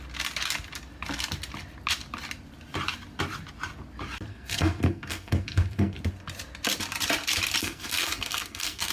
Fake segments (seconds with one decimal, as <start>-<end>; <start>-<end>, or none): 4.3-6.0; 7.6-8.9